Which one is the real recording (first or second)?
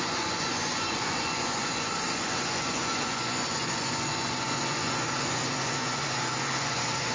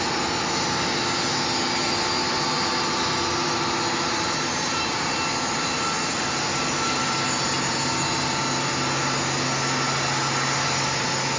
second